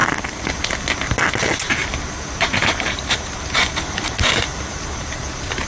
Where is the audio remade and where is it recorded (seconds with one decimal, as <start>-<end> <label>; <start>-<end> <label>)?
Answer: 0.0-1.8 recorded; 1.8-5.2 remade; 5.2-5.7 recorded